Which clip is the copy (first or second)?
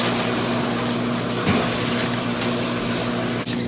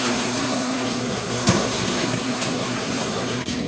second